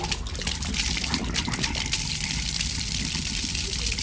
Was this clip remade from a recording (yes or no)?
no